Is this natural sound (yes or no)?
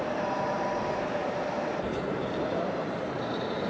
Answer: no